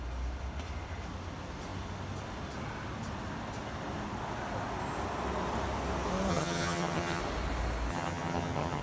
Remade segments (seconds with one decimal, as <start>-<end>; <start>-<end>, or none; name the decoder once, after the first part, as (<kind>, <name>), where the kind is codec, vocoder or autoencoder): 6.3-7.2 (vocoder, HiFi-GAN); 7.9-8.8

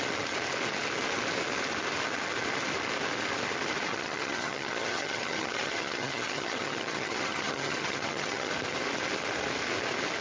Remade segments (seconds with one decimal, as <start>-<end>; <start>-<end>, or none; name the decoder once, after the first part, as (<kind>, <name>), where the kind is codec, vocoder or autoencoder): 3.9-8.5 (vocoder, HiFi-GAN)

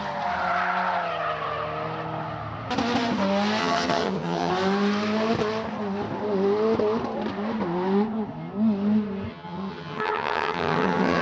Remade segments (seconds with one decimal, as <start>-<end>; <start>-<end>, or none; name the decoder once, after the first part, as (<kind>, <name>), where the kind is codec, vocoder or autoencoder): 3.6-4.5 (vocoder, HiFi-GAN); 9.3-11.2

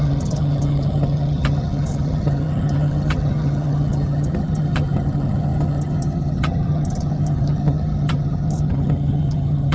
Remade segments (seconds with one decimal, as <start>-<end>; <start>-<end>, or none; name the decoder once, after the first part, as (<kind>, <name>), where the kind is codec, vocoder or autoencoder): 0.0-9.7 (vocoder, HiFi-GAN)

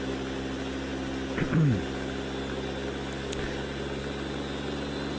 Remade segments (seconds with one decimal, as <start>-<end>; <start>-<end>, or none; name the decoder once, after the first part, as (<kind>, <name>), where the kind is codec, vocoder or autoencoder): none

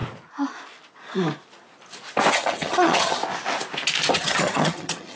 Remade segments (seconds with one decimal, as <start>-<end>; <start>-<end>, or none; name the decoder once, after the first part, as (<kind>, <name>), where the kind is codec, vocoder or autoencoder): 2.3-3.2 (vocoder, HiFi-GAN); 4.1-5.2